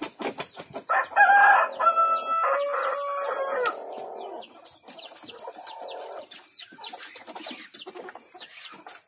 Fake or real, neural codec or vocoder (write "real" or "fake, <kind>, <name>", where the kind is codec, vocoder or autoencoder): real